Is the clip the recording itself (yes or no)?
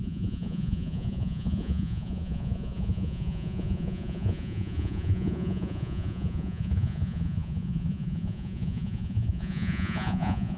no